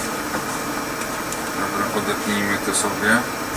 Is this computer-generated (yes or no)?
no